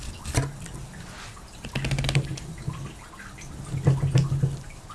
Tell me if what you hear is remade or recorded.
recorded